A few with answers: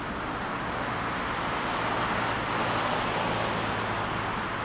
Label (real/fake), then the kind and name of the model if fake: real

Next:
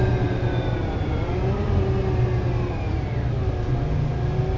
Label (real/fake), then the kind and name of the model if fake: real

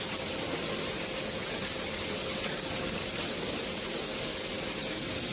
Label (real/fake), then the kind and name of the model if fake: real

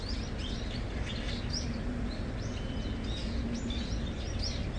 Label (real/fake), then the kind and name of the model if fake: real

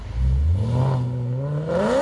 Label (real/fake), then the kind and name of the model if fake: real